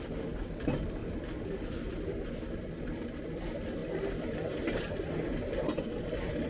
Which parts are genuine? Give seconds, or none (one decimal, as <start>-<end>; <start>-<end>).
0.0-6.5